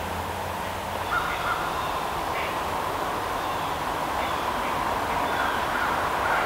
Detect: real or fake real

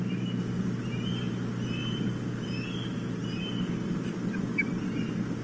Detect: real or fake real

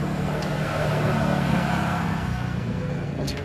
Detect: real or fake fake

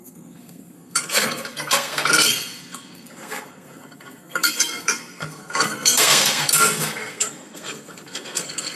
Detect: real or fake fake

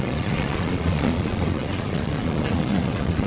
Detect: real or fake fake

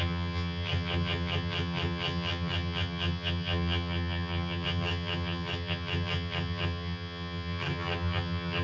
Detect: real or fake fake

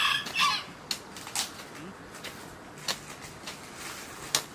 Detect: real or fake real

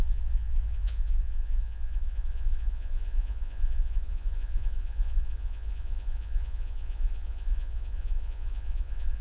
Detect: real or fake fake